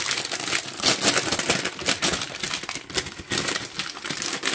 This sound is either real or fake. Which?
real